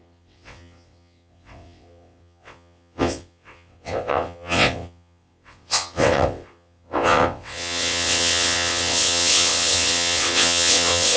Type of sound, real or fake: fake